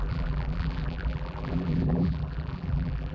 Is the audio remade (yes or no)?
yes